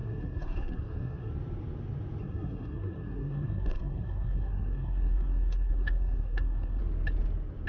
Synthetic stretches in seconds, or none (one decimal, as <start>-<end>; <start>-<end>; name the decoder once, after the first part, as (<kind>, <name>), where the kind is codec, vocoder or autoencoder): 0.0-1.3 (codec, SNAC); 2.2-6.8